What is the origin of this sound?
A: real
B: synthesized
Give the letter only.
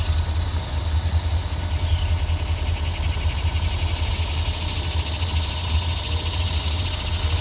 A